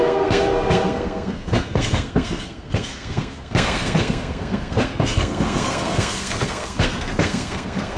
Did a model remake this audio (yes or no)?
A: yes